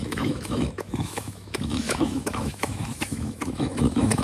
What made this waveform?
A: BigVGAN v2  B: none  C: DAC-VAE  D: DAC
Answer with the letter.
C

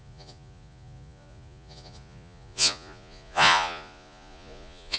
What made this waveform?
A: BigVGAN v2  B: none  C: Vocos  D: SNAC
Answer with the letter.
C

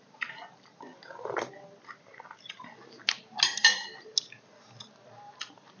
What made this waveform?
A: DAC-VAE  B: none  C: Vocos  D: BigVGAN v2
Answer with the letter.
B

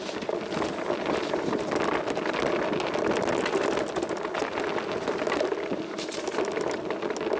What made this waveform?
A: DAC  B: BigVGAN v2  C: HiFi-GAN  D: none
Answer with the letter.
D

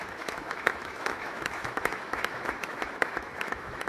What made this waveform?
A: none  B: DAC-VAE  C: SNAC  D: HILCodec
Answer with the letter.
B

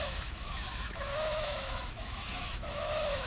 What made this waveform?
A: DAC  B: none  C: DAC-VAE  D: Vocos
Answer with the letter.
C